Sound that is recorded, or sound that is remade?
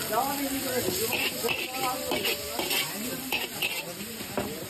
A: recorded